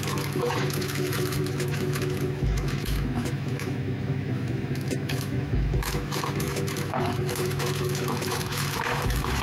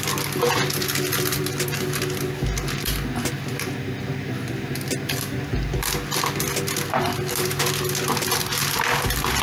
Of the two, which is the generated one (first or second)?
first